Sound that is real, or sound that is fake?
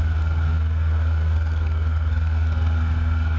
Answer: fake